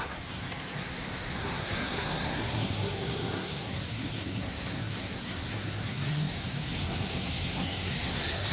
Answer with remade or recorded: remade